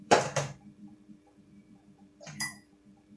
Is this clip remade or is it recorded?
remade